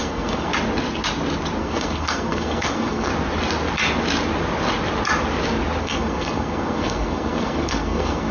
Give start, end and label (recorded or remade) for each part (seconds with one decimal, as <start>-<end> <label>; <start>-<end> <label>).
0.0-0.5 remade; 0.5-1.6 recorded; 1.6-3.1 remade; 3.1-5.8 recorded; 5.8-8.3 remade

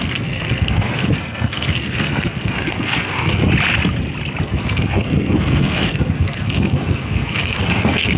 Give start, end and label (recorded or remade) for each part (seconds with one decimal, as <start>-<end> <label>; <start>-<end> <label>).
0.0-3.5 remade; 3.5-4.4 recorded; 4.4-8.2 remade

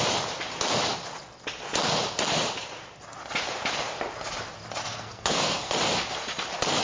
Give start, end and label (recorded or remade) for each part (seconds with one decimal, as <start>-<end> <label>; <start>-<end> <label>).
0.0-4.8 recorded; 4.8-5.7 remade; 5.7-6.8 recorded

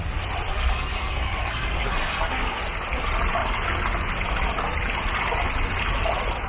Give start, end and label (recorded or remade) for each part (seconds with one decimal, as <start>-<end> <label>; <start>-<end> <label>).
0.0-0.5 recorded; 0.5-2.6 remade; 2.6-6.5 recorded

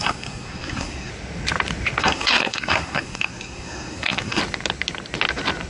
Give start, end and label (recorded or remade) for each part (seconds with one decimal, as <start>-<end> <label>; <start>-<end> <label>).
0.0-1.1 remade; 1.1-2.0 recorded; 2.0-4.4 remade; 4.4-5.7 recorded

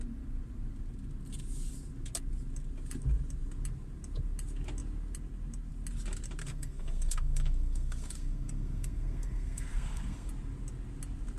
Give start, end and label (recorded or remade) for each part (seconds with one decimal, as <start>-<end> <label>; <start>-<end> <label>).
0.0-6.4 recorded; 6.4-10.3 remade; 10.3-11.4 recorded

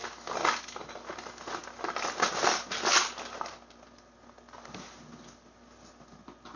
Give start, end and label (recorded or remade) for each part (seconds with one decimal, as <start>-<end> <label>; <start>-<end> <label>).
0.0-6.6 recorded

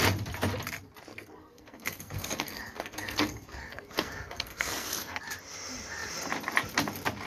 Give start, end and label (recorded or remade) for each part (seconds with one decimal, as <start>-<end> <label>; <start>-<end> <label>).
0.0-1.1 recorded; 1.1-5.2 remade; 5.2-7.3 recorded